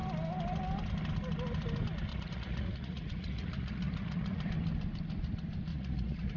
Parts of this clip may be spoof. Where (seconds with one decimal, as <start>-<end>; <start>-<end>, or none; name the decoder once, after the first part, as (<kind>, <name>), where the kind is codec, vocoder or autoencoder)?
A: 2.1-4.5 (vocoder, Vocos); 5.7-6.4